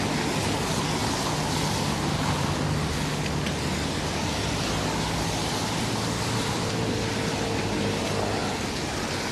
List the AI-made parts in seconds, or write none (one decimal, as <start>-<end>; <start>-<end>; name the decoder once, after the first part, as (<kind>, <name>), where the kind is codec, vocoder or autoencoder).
none

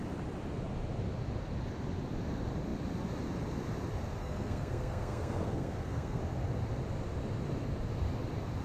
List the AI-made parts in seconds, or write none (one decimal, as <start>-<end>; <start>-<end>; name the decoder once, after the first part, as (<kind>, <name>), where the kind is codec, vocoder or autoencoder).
4.2-6.2 (codec, SNAC)